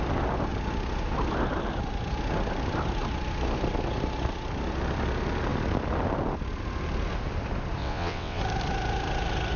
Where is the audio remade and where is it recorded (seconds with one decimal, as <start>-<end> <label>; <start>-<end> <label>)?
0.0-7.8 recorded; 7.8-8.4 remade; 8.4-9.6 recorded